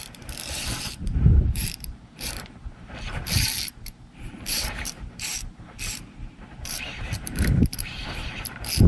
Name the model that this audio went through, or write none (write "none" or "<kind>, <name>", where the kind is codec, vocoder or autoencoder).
vocoder, BigVGAN v2